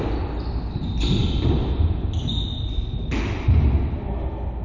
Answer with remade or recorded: recorded